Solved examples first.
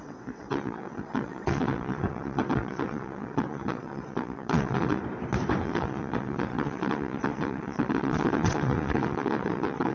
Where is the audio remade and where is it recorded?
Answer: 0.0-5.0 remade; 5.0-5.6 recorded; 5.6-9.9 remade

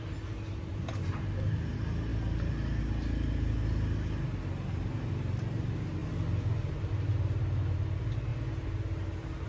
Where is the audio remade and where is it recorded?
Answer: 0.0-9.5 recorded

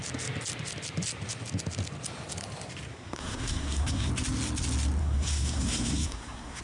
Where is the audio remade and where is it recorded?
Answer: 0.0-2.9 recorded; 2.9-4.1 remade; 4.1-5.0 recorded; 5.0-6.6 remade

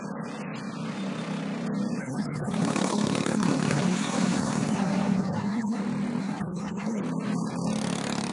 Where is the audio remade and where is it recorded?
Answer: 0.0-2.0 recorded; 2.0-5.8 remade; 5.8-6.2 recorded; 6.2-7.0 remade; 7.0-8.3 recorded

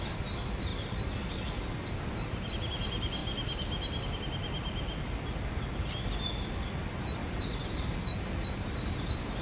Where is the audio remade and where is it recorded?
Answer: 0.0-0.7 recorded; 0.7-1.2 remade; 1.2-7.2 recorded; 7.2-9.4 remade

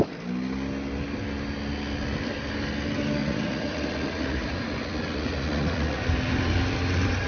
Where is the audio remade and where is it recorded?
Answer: 0.0-3.2 recorded; 3.2-6.0 remade; 6.0-7.3 recorded

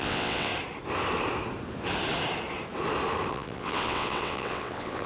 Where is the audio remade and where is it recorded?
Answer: 0.0-0.5 remade; 0.5-3.3 recorded; 3.3-5.1 remade

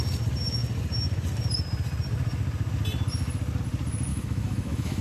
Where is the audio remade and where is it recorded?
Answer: 0.0-4.1 recorded; 4.1-5.0 remade